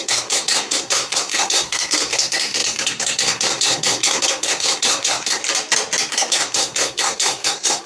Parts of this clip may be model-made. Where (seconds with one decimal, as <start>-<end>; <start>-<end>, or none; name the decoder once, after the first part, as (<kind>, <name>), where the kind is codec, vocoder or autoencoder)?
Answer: 0.0-5.4 (codec, SNAC); 6.1-7.9